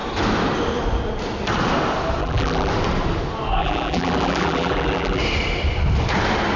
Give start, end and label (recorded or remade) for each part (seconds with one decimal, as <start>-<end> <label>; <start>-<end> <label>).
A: 0.0-2.2 recorded; 2.2-2.7 remade; 2.7-3.6 recorded; 3.6-5.2 remade; 5.2-6.6 recorded